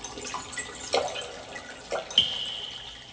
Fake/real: real